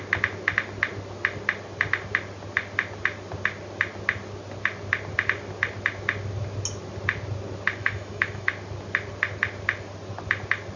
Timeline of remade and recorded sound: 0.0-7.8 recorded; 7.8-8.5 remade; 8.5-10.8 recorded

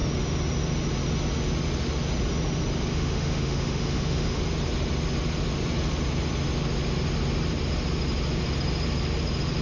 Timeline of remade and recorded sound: 0.0-2.9 recorded; 2.9-4.4 remade; 4.4-9.6 recorded

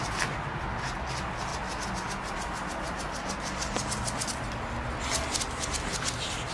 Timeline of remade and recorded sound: 0.0-6.5 recorded

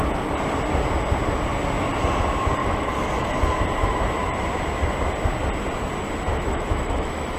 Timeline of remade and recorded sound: 0.0-2.6 recorded; 2.6-3.3 remade; 3.3-6.3 recorded; 6.3-7.4 remade

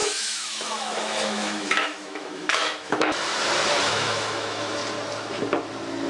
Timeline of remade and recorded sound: 0.0-3.3 remade; 3.3-3.8 recorded; 3.8-4.8 remade; 4.8-6.1 recorded